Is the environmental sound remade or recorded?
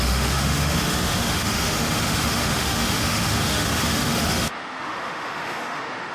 remade